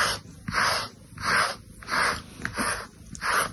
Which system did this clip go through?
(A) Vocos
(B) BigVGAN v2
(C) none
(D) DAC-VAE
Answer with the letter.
C